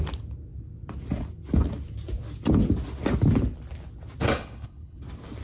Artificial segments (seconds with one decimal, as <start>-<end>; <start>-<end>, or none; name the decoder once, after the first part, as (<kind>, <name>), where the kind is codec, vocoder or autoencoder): 4.3-5.0 (codec, HILCodec)